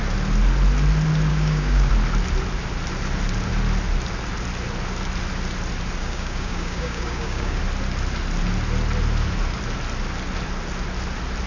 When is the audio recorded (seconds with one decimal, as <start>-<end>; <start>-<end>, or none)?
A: 0.0-1.3; 1.9-6.0; 7.6-11.5